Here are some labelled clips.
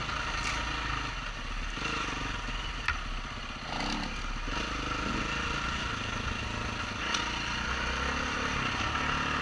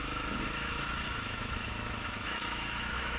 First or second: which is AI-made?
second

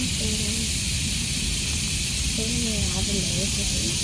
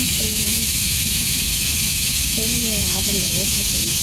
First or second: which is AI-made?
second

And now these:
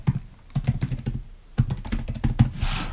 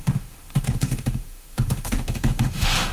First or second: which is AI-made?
second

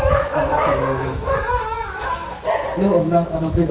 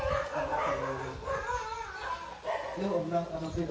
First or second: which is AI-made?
first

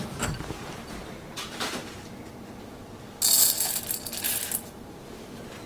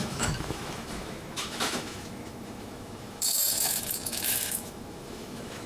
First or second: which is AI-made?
second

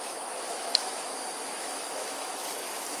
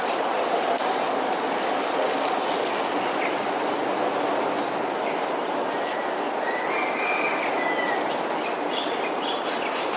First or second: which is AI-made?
first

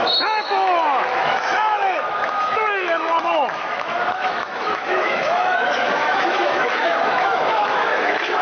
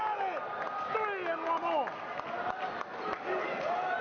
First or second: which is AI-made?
first